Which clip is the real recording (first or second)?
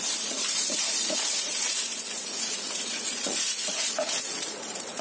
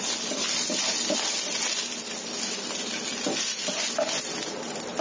second